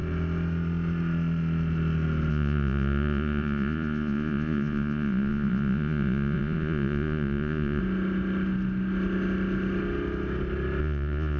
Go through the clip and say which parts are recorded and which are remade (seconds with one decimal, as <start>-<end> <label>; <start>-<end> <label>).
0.0-2.3 recorded; 2.3-7.8 remade; 7.8-10.8 recorded; 10.8-11.4 remade